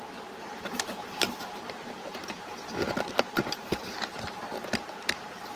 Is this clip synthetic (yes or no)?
yes